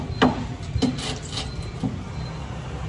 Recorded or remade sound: recorded